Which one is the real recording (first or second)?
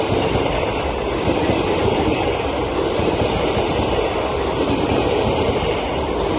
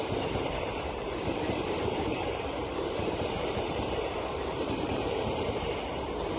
first